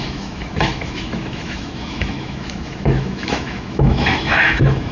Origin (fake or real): fake